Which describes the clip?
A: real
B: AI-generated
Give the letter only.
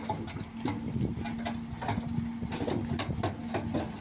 A